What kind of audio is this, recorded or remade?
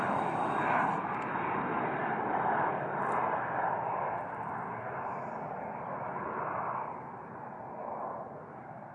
recorded